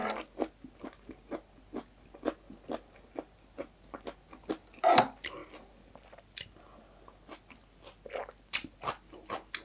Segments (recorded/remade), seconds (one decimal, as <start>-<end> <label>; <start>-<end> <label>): 0.0-9.6 recorded